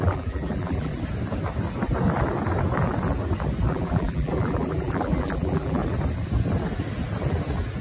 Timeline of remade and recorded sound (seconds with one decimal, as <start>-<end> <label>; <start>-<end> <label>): 0.0-0.9 remade; 0.9-3.7 recorded; 3.7-5.8 remade; 5.8-7.8 recorded